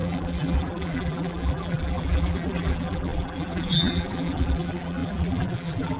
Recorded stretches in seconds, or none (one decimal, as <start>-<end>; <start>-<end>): none